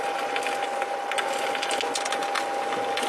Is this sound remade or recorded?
recorded